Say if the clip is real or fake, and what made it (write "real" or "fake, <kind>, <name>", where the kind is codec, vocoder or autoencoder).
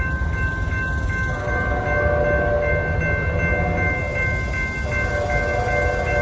real